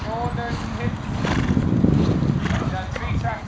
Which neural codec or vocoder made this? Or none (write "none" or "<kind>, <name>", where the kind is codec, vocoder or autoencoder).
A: none